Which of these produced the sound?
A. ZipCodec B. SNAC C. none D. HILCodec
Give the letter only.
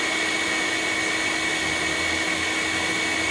C